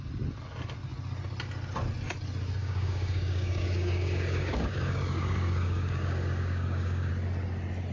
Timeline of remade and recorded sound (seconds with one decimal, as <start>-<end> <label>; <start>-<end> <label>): 0.0-2.6 recorded; 2.6-7.1 remade; 7.1-7.9 recorded